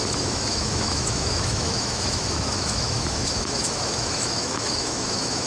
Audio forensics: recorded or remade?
remade